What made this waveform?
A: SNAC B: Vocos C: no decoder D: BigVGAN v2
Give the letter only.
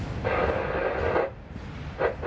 C